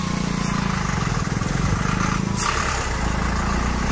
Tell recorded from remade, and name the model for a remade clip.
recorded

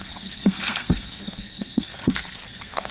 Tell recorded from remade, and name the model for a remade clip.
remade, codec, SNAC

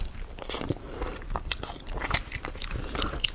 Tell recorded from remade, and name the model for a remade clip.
recorded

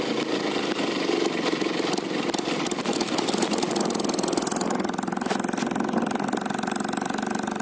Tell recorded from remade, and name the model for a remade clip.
recorded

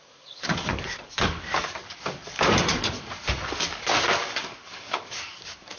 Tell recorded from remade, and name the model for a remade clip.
remade, codec, DAC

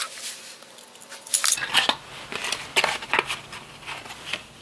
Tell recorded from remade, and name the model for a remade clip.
remade, vocoder, BigVGAN v2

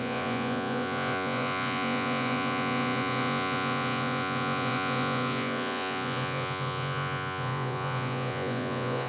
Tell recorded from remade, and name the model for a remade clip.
remade, vocoder, Vocos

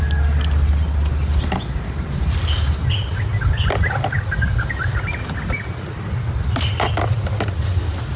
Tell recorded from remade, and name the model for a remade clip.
recorded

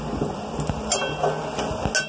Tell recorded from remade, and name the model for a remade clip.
recorded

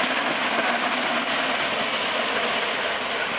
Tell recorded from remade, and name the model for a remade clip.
recorded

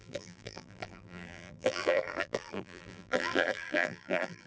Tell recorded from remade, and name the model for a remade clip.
remade, vocoder, BigVGAN v2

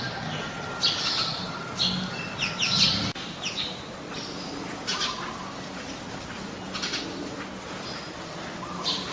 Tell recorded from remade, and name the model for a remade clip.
recorded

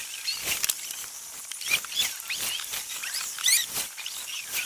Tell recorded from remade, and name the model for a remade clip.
recorded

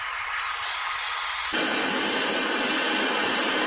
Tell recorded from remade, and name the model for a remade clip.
recorded